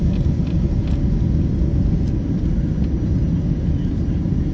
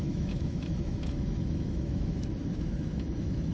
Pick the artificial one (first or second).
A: second